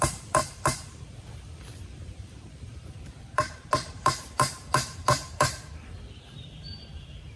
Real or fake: fake